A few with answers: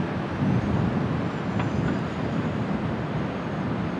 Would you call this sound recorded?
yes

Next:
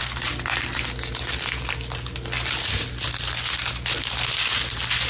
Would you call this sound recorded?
yes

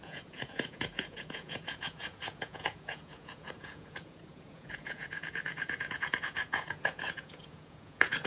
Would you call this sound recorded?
no